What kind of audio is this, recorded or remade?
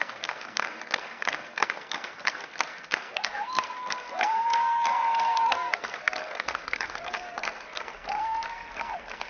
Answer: remade